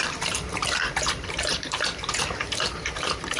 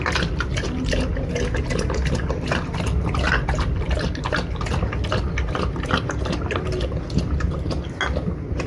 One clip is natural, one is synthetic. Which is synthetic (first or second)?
first